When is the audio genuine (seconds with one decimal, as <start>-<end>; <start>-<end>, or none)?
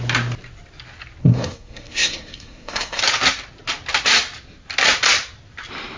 0.0-1.2; 3.0-6.0